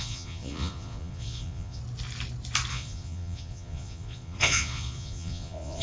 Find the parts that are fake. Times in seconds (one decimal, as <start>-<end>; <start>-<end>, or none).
0.0-1.8; 2.7-5.8